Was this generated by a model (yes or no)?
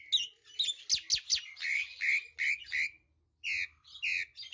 no